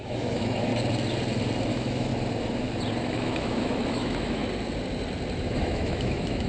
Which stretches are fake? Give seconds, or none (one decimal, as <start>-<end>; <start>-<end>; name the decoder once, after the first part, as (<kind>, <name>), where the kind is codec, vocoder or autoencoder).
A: 0.0-0.7 (autoencoder, DAC-VAE); 1.7-2.1; 3.0-4.4; 5.4-6.5